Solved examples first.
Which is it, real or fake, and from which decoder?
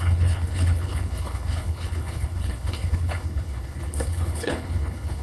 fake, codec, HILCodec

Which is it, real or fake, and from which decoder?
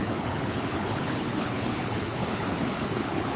fake, codec, HILCodec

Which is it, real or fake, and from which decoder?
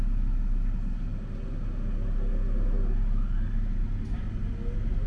real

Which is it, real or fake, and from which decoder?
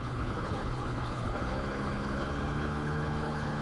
fake, codec, HILCodec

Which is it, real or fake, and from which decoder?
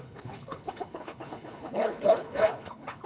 fake, codec, HILCodec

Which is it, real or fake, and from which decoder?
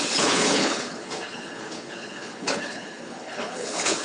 fake, codec, HILCodec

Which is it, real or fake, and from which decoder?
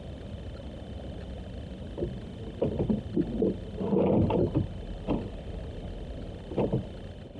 real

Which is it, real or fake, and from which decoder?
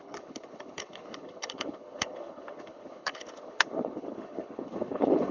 fake, codec, HILCodec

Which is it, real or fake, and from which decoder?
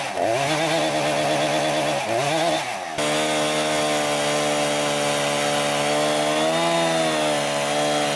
real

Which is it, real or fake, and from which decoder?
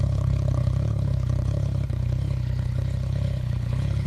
fake, codec, HILCodec